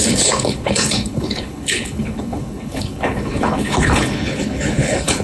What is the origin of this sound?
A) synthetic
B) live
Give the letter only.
A